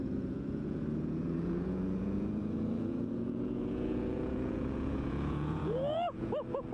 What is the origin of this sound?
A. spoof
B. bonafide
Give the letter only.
A